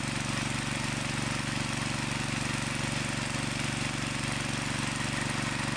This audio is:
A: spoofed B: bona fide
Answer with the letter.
B